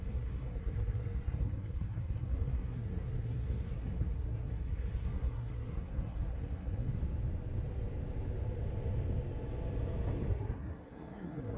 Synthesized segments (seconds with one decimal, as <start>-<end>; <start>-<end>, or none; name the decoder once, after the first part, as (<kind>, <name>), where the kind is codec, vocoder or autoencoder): 0.0-6.9 (codec, SNAC); 10.3-11.6